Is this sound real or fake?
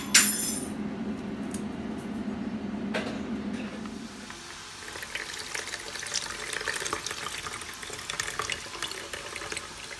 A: real